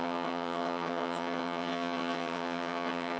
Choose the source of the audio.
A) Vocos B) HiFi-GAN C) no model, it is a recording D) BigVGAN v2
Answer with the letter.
B